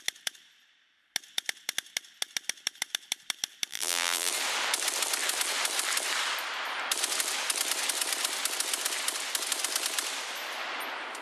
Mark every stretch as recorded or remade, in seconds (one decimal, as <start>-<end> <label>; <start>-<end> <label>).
0.0-3.7 recorded; 3.7-4.3 remade; 4.3-11.2 recorded